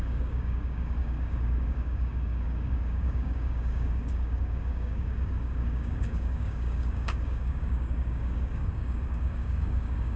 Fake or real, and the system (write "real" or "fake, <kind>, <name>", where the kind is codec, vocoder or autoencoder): fake, codec, DAC